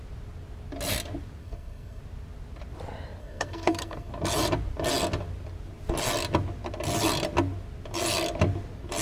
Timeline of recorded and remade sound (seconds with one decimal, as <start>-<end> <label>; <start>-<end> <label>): 0.0-1.4 recorded; 1.4-2.0 remade; 2.0-3.2 recorded; 3.2-4.1 remade; 4.1-9.0 recorded